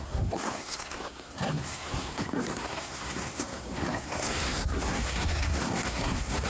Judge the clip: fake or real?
fake